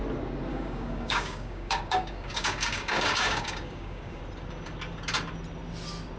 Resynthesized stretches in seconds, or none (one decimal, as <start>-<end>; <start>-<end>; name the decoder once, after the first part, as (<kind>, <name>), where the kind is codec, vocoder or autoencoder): 0.5-4.2 (codec, DAC)